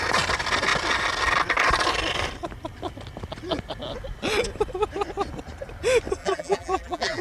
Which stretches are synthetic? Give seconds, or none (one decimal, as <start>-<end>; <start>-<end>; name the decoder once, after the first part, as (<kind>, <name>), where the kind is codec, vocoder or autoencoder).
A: 6.2-7.2 (vocoder, BigVGAN v2)